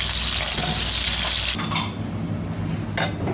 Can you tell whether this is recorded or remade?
recorded